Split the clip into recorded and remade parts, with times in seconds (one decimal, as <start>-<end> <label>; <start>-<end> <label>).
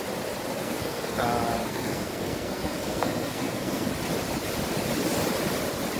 0.0-0.6 recorded; 0.6-1.2 remade; 1.2-1.6 recorded; 1.6-3.9 remade; 3.9-6.0 recorded